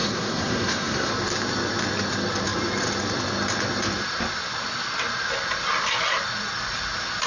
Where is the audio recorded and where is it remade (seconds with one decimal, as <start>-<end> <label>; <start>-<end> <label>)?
0.0-1.1 remade; 1.1-7.3 recorded